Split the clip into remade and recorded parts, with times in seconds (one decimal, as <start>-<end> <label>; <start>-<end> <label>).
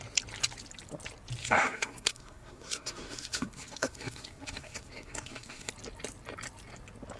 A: 0.0-1.4 recorded; 1.4-5.7 remade; 5.7-7.2 recorded